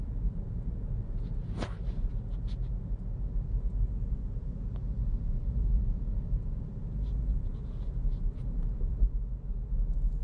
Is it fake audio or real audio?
real